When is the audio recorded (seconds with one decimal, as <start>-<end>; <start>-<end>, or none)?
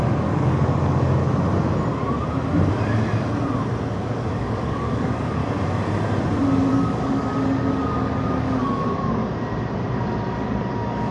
1.2-3.9; 5.4-6.7; 9.2-10.3